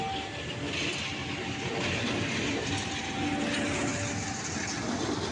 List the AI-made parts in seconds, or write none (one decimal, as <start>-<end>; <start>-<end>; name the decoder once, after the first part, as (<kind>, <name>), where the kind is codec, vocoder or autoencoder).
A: 1.2-2.9 (vocoder, BigVGAN v2)